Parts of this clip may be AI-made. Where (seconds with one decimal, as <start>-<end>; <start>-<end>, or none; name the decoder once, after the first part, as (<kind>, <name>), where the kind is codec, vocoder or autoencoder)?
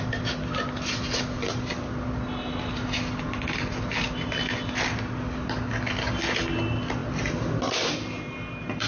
none